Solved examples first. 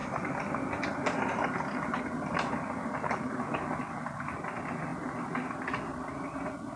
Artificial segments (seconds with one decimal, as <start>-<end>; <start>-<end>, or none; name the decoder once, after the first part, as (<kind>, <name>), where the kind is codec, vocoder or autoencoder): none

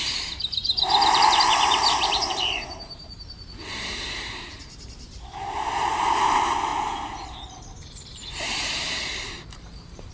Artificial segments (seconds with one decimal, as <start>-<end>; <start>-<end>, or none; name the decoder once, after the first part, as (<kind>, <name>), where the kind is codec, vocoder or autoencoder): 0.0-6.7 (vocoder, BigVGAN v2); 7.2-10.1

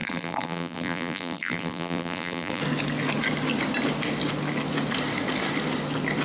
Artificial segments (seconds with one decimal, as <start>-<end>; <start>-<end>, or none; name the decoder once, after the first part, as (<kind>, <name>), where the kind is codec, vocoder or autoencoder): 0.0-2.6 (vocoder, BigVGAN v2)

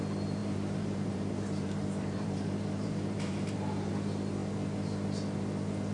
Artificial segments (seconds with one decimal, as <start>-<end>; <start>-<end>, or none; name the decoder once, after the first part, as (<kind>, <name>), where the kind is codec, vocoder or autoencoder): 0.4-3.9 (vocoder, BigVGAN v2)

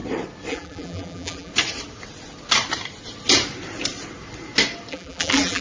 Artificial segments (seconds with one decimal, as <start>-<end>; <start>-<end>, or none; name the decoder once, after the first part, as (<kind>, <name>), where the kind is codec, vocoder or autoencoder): 0.5-1.5 (vocoder, BigVGAN v2); 4.9-5.6